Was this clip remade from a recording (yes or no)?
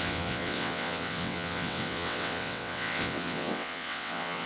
yes